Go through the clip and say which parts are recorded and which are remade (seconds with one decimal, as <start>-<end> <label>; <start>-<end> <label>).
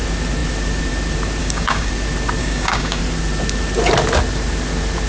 0.0-1.4 recorded; 1.4-1.9 remade; 1.9-2.4 recorded; 2.4-3.0 remade; 3.0-5.1 recorded